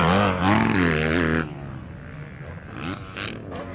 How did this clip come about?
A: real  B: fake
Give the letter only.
A